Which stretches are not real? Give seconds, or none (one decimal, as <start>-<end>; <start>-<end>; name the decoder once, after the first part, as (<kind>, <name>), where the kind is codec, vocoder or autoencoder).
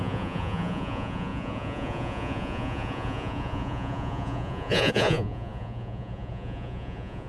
0.0-7.3 (vocoder, Vocos)